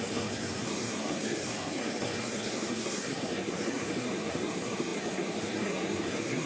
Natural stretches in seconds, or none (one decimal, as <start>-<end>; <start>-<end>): none